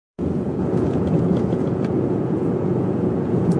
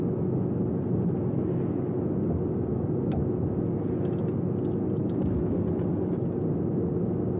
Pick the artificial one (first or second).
first